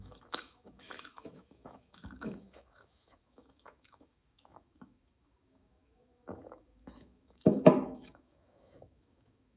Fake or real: fake